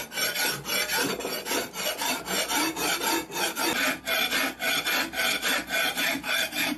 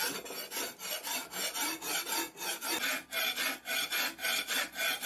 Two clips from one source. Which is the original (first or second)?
second